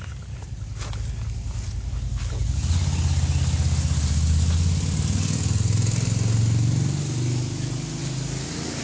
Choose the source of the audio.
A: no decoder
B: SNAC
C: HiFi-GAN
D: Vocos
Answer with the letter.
A